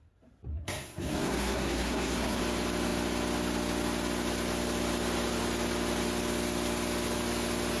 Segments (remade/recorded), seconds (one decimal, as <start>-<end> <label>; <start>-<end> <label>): 0.0-0.5 recorded; 0.5-2.4 remade; 2.4-7.8 recorded

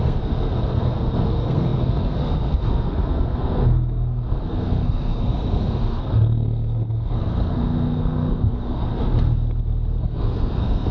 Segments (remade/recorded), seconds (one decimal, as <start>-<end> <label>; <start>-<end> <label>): 0.0-8.9 remade; 8.9-10.0 recorded; 10.0-10.9 remade

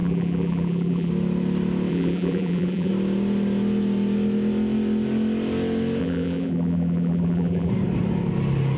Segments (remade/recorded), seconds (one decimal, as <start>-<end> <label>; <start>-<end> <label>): 0.0-1.1 remade; 1.1-1.9 recorded; 1.9-2.9 remade; 2.9-6.0 recorded; 6.0-7.7 remade; 7.7-8.8 recorded

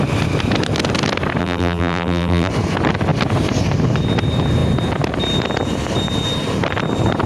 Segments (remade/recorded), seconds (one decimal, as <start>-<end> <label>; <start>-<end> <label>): 0.0-1.4 recorded; 1.4-2.5 remade; 2.5-7.3 recorded

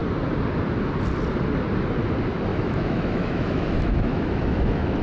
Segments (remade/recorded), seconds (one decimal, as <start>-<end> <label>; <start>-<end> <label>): 0.0-2.5 recorded; 2.5-5.0 remade